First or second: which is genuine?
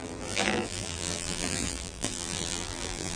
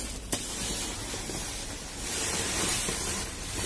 second